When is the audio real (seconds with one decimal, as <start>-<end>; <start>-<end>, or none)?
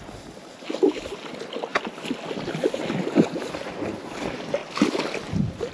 0.0-5.7